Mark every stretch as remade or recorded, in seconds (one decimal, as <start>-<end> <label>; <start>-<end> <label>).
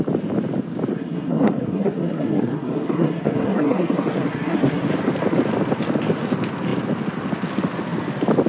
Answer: 0.0-0.9 recorded; 0.9-4.9 remade; 4.9-8.5 recorded